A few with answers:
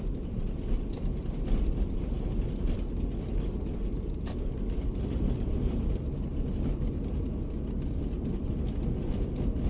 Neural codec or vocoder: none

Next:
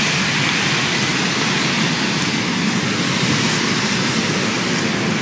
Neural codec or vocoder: none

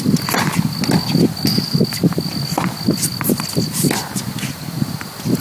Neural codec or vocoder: none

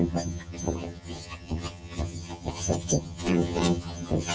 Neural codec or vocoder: vocoder, HiFi-GAN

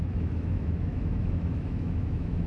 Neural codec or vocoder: autoencoder, DAC-VAE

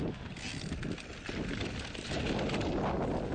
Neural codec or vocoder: none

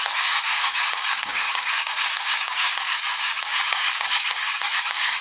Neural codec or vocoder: codec, DAC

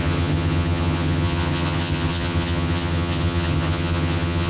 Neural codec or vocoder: vocoder, HiFi-GAN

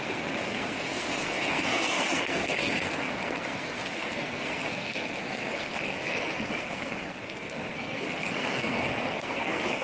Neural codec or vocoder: codec, SNAC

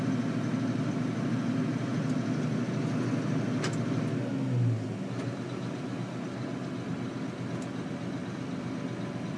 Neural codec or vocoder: none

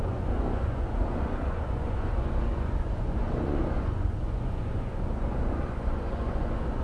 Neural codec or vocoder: vocoder, Vocos